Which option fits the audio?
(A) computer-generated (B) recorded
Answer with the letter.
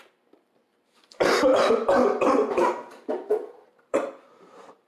A